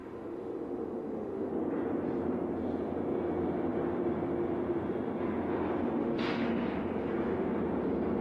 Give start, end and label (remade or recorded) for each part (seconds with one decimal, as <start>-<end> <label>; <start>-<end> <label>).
0.0-1.5 remade; 1.5-6.0 recorded; 6.0-6.5 remade; 6.5-8.2 recorded